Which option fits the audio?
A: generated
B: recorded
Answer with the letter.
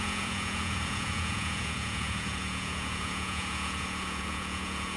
A